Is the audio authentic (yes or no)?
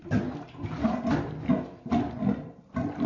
yes